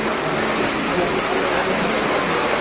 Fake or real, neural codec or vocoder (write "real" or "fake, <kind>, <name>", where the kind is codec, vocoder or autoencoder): real